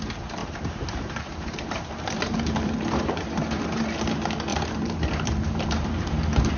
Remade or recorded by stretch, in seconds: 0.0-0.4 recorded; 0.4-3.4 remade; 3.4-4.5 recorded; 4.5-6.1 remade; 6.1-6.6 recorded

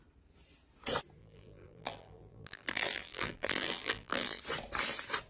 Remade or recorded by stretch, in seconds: 0.0-1.2 recorded; 1.2-4.4 remade; 4.4-5.3 recorded

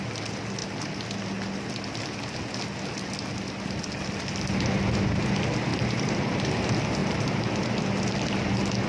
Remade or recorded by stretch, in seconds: 0.0-5.7 recorded; 5.7-6.3 remade; 6.3-7.0 recorded; 7.0-7.6 remade; 7.6-8.9 recorded

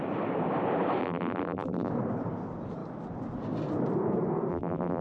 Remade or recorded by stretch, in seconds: 0.0-1.0 recorded; 1.0-1.9 remade; 1.9-4.5 recorded; 4.5-5.0 remade

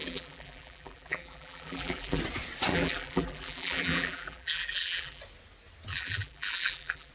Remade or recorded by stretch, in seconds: 0.0-2.2 remade; 2.2-2.7 recorded; 2.7-5.2 remade; 5.2-5.9 recorded; 5.9-7.1 remade

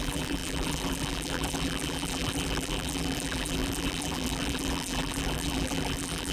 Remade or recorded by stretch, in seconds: 0.0-6.3 remade

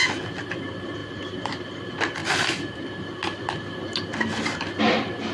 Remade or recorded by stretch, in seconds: 0.0-1.0 recorded; 1.0-1.8 remade; 1.8-5.3 recorded

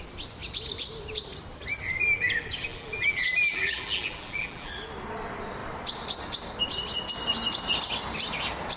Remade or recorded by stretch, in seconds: 0.0-2.7 recorded; 2.7-4.7 remade; 4.7-8.8 recorded